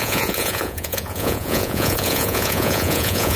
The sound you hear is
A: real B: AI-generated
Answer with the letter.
B